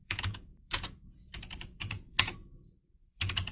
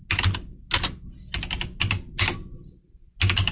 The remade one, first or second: first